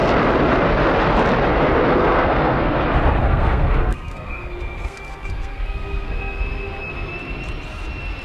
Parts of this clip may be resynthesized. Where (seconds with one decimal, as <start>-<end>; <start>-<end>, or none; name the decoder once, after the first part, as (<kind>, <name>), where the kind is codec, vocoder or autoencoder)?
2.0-2.8 (codec, SNAC); 3.2-6.4